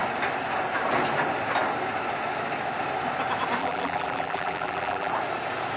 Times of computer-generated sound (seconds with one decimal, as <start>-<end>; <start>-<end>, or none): 3.6-5.1